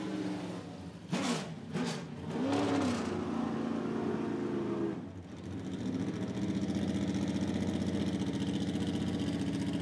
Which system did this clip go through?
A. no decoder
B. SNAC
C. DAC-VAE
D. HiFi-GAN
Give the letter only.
A